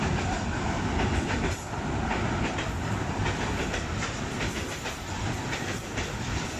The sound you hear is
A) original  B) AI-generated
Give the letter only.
B